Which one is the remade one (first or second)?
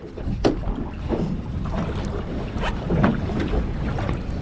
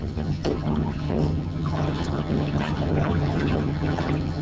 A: second